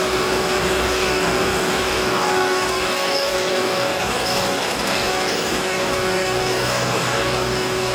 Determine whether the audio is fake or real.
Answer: fake